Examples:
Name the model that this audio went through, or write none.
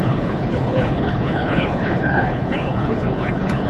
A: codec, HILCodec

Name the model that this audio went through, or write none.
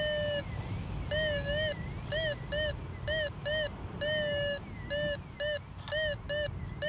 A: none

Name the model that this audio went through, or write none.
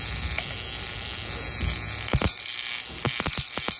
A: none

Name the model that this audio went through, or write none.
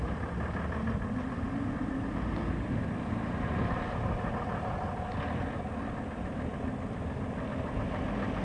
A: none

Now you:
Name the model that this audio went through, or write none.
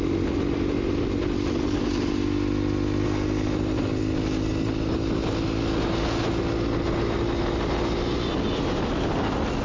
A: none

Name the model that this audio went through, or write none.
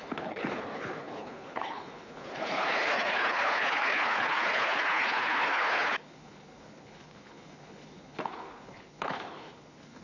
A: codec, HILCodec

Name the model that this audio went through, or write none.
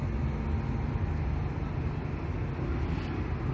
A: none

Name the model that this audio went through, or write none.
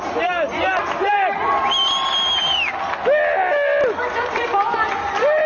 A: none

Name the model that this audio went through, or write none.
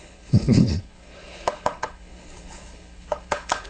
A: codec, HILCodec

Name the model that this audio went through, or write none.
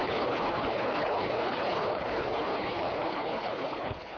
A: codec, HILCodec